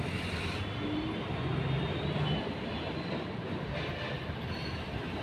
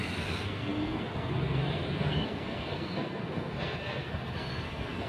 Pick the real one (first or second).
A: first